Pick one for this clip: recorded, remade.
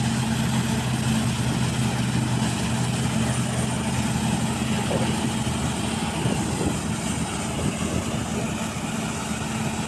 recorded